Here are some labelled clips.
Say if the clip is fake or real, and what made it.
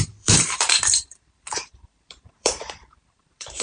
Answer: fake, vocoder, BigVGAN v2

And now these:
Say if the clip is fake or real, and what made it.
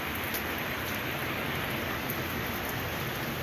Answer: real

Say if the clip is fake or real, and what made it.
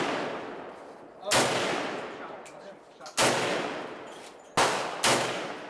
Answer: real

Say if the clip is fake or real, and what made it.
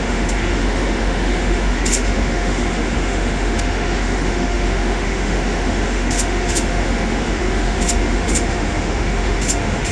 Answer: fake, autoencoder, DAC-VAE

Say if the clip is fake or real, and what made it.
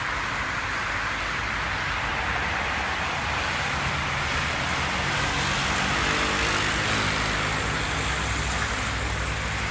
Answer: real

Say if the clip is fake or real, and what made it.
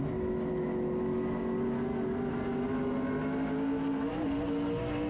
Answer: real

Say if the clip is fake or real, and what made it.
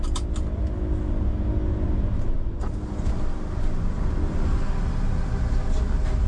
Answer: real